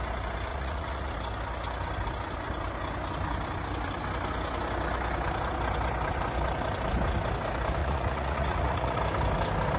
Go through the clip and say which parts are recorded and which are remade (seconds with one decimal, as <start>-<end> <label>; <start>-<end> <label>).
0.0-0.5 recorded; 0.5-1.1 remade; 1.1-7.8 recorded; 7.8-9.0 remade; 9.0-9.8 recorded